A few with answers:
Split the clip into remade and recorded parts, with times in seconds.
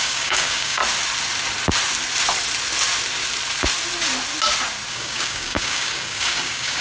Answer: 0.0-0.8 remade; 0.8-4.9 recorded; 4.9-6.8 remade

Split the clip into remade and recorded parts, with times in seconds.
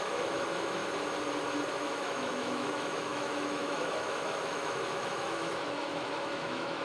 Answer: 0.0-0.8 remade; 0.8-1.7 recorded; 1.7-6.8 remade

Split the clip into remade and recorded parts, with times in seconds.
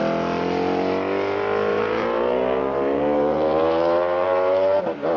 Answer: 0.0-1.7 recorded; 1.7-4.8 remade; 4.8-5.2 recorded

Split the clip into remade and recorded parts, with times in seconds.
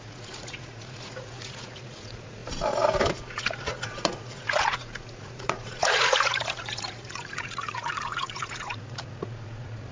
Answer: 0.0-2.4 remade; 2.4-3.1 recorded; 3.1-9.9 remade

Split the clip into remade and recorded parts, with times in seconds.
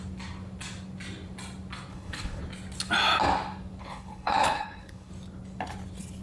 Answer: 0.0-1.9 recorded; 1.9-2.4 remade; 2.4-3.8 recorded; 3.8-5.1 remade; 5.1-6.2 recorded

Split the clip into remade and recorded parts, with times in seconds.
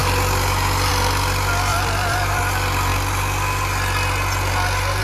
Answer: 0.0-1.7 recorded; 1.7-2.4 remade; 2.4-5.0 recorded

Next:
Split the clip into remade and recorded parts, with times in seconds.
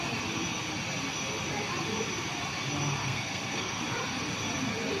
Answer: 0.0-3.0 recorded; 3.0-3.8 remade; 3.8-5.0 recorded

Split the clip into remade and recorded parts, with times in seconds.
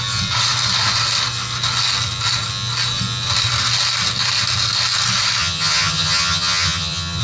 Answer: 0.0-5.4 recorded; 5.4-7.2 remade